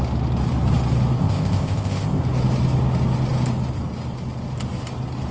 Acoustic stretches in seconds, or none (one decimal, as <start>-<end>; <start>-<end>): 0.0-1.2; 2.2-5.3